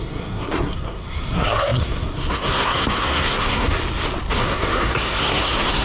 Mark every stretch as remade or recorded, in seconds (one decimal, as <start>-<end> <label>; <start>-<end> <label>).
0.0-3.8 remade; 3.8-4.4 recorded; 4.4-5.8 remade